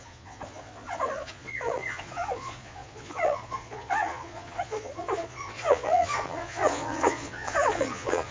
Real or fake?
fake